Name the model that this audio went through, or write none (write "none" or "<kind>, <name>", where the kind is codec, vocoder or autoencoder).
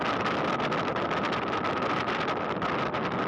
none